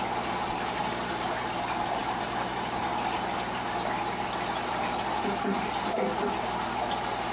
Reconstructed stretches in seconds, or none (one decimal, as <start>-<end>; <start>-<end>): none